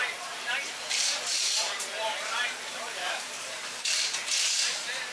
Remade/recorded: remade